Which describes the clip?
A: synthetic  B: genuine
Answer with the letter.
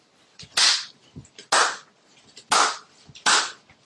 B